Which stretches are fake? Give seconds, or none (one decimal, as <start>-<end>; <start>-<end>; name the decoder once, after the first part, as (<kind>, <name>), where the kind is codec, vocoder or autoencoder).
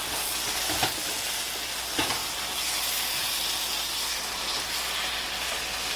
none